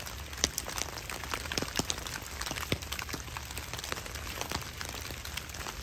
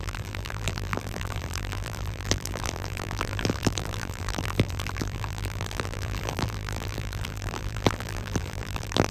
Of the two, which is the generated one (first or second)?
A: second